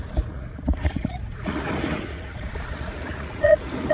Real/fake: fake